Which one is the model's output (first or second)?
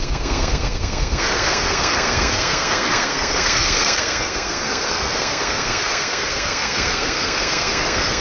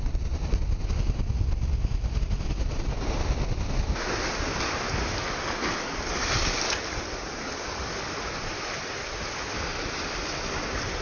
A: first